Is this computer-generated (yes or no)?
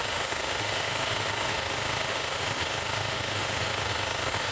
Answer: yes